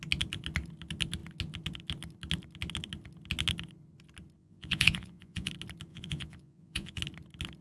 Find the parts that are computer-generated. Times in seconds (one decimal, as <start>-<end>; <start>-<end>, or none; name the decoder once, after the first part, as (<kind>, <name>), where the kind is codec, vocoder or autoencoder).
4.4-5.5 (vocoder, Vocos); 5.9-7.0